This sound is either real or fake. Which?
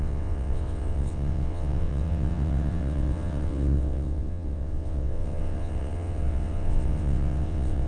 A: fake